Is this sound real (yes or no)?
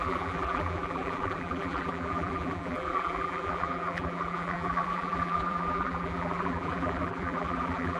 no